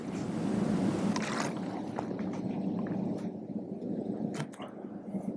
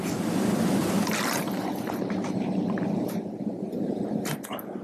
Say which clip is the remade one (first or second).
second